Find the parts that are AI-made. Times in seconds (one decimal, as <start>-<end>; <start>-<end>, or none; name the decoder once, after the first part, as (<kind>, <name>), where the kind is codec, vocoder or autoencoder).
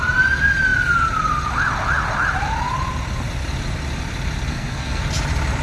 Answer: 4.5-5.0 (codec, SNAC)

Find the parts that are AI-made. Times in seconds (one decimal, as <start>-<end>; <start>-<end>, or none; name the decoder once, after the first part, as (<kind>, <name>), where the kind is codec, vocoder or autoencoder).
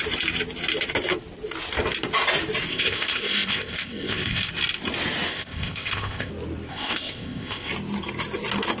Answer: 2.7-4.5 (codec, ZipCodec); 5.3-6.3; 6.7-7.7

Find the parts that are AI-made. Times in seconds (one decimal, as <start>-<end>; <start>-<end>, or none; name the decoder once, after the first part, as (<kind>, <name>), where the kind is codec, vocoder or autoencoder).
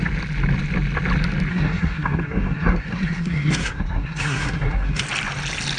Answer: 1.5-5.0 (codec, SNAC)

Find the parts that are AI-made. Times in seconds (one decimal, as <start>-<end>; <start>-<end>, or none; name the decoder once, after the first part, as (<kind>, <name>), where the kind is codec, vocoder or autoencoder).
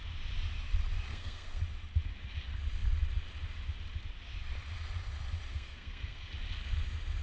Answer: 1.1-1.6 (codec, SNAC); 5.5-6.3